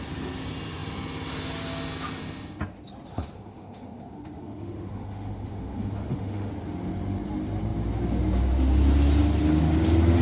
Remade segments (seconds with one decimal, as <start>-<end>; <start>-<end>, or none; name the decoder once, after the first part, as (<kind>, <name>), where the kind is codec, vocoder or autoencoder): 3.1-6.5 (autoencoder, DAC-VAE)